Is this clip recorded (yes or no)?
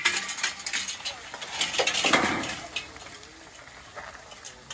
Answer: yes